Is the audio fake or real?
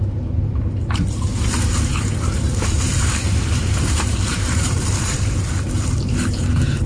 fake